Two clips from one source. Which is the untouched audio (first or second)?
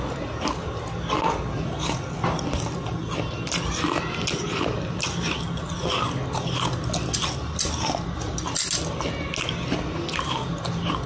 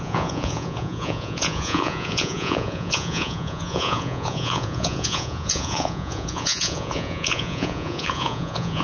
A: first